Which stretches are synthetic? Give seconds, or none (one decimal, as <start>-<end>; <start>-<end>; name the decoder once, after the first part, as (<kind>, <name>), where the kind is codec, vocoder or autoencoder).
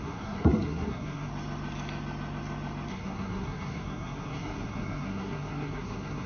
0.0-1.3 (codec, SNAC); 2.9-6.3